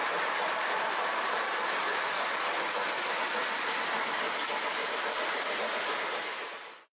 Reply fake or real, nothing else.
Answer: fake